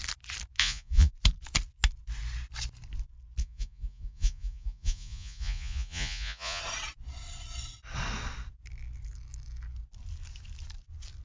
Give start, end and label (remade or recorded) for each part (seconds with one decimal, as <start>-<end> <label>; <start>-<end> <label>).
0.0-0.6 recorded; 0.6-1.1 remade; 1.1-3.4 recorded; 3.4-6.6 remade; 6.6-11.2 recorded